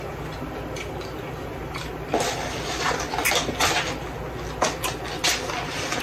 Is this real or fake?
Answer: real